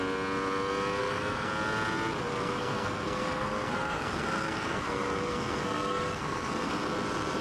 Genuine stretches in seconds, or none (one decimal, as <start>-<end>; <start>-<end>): 0.0-1.0; 1.5-2.3; 6.7-7.4